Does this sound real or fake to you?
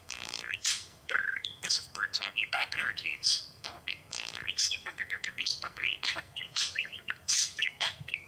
fake